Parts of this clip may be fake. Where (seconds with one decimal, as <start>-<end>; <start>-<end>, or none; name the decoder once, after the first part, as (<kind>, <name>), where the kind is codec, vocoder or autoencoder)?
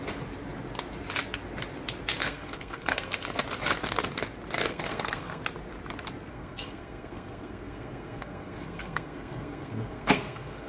2.2-3.2 (codec, SNAC); 4.7-5.4; 6.3-10.7